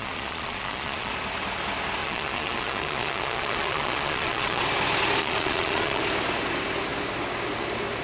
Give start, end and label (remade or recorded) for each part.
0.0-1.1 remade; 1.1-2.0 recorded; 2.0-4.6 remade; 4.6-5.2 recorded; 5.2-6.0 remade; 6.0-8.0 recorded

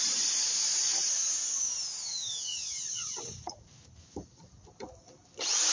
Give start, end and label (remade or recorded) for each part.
0.0-2.5 recorded; 2.5-3.7 remade; 3.7-5.7 recorded

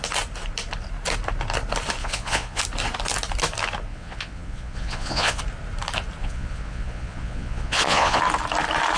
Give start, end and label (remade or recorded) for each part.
0.0-2.0 recorded; 2.0-2.6 remade; 2.6-3.9 recorded; 3.9-5.4 remade; 5.4-6.2 recorded; 6.2-8.2 remade; 8.2-9.0 recorded

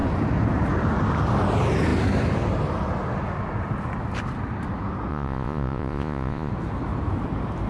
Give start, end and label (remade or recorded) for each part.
0.0-5.1 recorded; 5.1-6.5 remade; 6.5-7.7 recorded

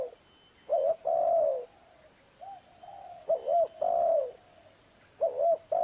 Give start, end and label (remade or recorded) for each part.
0.0-5.8 recorded

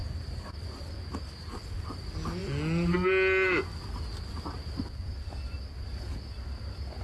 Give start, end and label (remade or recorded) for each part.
0.0-7.0 recorded